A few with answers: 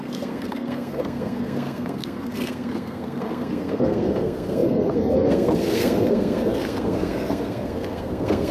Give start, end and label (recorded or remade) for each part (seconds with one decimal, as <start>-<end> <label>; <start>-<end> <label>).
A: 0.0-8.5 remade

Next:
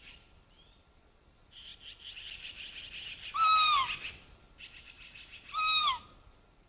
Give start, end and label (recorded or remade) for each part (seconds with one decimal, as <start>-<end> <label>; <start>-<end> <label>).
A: 0.0-6.7 recorded

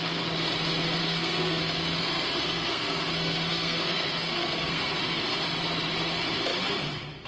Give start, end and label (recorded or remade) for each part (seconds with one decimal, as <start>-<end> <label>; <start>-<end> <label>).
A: 0.0-1.0 recorded; 1.0-5.2 remade; 5.2-7.3 recorded

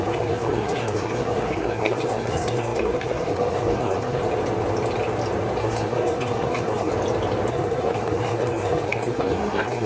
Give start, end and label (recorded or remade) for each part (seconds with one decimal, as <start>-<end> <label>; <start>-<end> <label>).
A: 0.0-4.2 remade; 4.2-5.6 recorded; 5.6-6.9 remade; 6.9-7.5 recorded; 7.5-9.9 remade